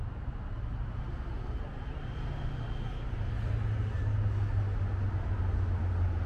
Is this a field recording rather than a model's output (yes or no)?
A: yes